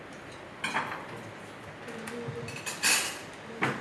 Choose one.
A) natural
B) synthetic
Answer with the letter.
A